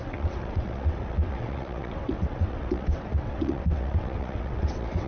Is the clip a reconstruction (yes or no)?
yes